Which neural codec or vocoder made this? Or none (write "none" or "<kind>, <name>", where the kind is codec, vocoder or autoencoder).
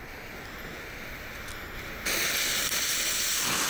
none